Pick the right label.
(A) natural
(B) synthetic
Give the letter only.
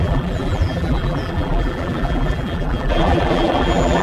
B